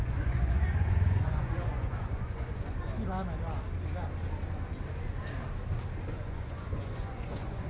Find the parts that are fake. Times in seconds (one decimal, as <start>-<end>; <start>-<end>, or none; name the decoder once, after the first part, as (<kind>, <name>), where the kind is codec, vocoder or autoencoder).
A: 0.0-2.9 (vocoder, Vocos); 6.1-7.7

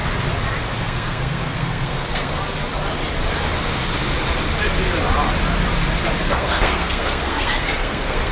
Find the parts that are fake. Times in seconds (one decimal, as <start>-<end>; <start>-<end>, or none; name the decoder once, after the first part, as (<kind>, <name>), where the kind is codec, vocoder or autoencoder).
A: 0.8-2.4 (codec, SNAC); 6.2-8.3

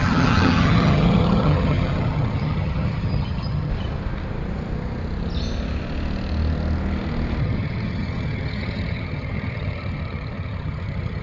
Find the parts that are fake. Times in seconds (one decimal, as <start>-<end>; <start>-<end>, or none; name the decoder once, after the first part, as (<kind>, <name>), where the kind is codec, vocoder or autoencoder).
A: 0.0-3.7 (vocoder, HiFi-GAN); 7.4-11.2

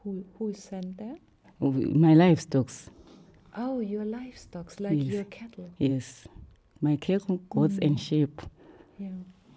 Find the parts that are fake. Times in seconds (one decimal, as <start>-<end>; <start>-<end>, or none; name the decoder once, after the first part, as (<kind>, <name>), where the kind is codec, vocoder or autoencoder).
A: none

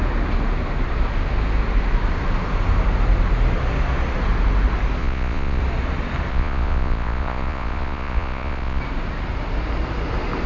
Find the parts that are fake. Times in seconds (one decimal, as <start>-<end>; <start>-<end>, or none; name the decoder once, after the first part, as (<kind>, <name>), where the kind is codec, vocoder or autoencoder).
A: 5.0-5.6 (vocoder, Vocos); 6.3-8.8

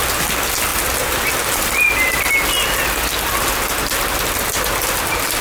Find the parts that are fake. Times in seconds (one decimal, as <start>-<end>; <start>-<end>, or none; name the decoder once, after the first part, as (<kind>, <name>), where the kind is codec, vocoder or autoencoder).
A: none

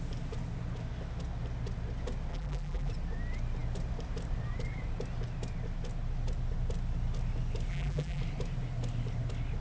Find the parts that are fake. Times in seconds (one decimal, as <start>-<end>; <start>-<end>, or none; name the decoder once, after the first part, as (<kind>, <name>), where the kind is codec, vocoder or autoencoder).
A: 2.3-2.9 (vocoder, BigVGAN v2); 7.7-8.2